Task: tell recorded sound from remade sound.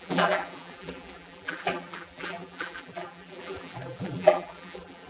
remade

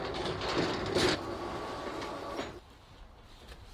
recorded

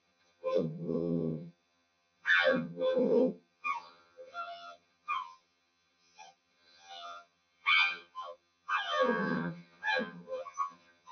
remade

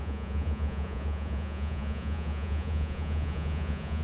remade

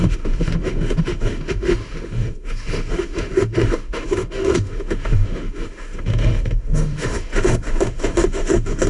remade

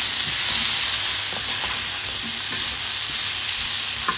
recorded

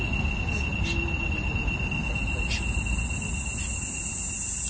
recorded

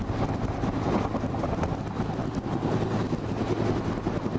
recorded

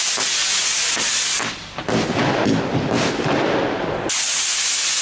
recorded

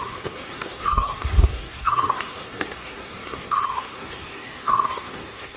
remade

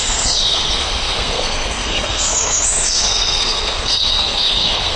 remade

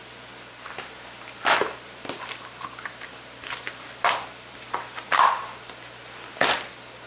recorded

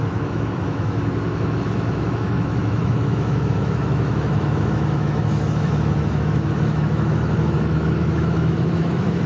remade